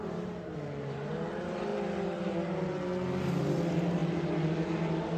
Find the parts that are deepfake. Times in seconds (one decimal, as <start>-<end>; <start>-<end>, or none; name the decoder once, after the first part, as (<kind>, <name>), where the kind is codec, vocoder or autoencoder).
0.0-1.7 (vocoder, BigVGAN v2); 3.2-4.0